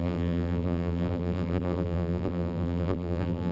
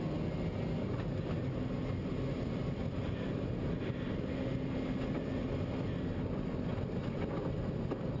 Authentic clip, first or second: second